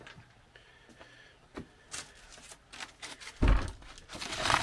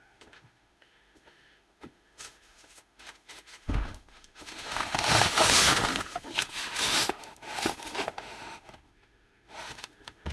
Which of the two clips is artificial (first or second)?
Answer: second